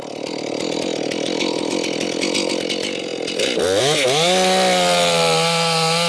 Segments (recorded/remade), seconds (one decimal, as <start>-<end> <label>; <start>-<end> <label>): 0.0-6.1 recorded